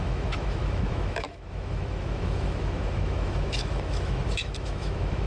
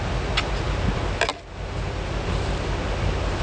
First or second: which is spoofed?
first